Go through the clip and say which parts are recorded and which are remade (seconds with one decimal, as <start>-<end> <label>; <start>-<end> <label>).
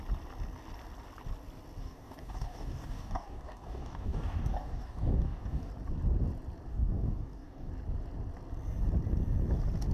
0.0-1.8 recorded; 1.8-5.7 remade; 5.7-6.7 recorded; 6.7-7.7 remade; 7.7-9.9 recorded